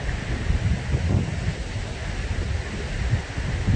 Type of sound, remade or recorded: recorded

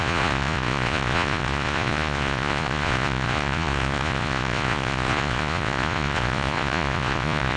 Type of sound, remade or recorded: remade